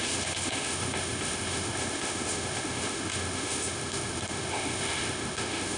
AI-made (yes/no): yes